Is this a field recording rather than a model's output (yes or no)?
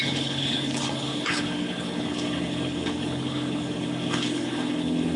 no